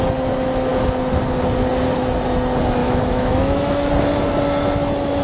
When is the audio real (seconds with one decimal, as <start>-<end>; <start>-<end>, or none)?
0.0-2.8; 3.9-5.2